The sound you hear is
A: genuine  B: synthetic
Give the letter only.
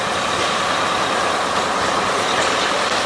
A